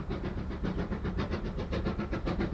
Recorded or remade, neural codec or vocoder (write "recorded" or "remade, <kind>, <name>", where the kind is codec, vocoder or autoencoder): recorded